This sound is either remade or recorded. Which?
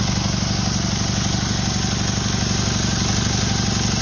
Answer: recorded